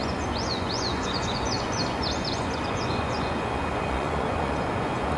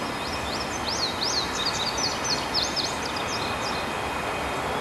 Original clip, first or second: second